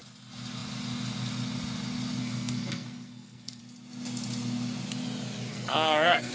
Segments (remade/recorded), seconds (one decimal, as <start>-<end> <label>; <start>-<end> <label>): 0.0-2.2 recorded; 2.2-3.6 remade; 3.6-5.5 recorded; 5.5-6.3 remade